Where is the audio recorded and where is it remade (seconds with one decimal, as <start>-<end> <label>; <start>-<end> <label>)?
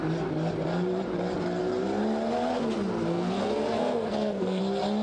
0.0-3.1 recorded; 3.1-4.6 remade; 4.6-5.0 recorded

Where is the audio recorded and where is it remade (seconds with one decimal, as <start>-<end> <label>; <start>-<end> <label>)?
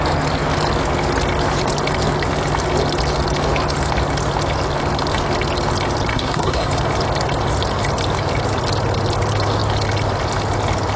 0.0-6.1 recorded; 6.1-6.7 remade; 6.7-11.0 recorded